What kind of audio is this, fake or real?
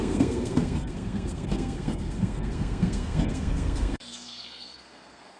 fake